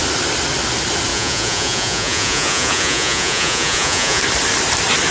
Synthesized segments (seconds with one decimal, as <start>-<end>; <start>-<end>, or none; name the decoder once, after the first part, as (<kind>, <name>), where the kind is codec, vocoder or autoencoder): 1.1-4.2 (vocoder, Vocos)